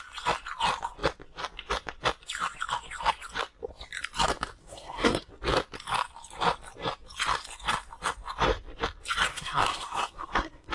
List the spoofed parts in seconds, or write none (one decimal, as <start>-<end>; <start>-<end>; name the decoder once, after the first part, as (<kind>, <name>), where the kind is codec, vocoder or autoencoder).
4.6-5.3 (codec, SNAC); 9.3-10.7